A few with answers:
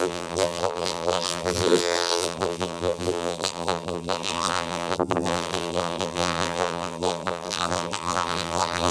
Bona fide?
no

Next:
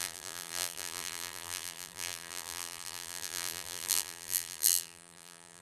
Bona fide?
no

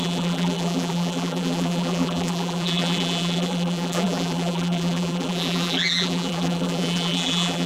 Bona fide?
no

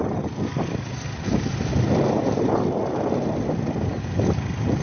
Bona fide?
yes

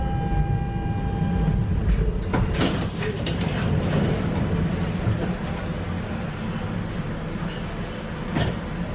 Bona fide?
yes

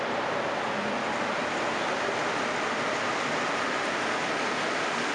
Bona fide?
yes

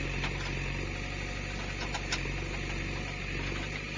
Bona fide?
yes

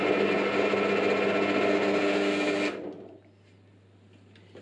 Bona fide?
yes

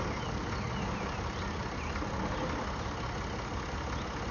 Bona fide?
yes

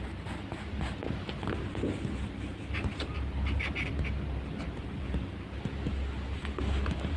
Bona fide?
yes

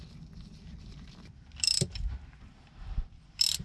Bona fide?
no